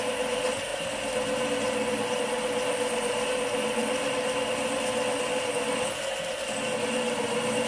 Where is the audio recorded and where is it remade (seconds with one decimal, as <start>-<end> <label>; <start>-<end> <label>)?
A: 0.0-7.7 recorded